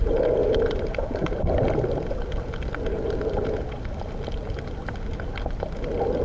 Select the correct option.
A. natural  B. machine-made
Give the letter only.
A